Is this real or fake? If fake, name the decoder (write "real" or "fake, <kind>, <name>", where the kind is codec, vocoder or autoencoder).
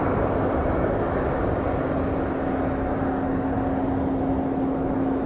real